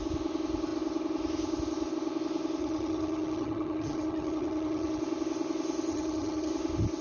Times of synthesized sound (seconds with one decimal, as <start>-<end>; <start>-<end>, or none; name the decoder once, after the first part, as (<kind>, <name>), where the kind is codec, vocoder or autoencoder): 2.6-5.0 (vocoder, HiFi-GAN); 5.9-6.5

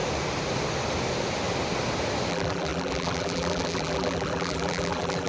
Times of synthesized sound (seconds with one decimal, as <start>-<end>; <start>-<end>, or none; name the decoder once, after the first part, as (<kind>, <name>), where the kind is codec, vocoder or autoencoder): 2.3-5.3 (vocoder, BigVGAN v2)

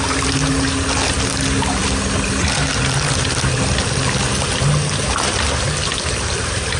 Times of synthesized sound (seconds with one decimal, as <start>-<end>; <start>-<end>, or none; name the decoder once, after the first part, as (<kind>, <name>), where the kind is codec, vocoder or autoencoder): none

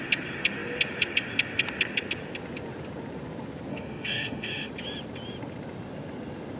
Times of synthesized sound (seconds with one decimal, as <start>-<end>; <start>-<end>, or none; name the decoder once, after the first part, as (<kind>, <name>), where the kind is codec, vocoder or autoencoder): 3.7-4.7 (autoencoder, DAC-VAE)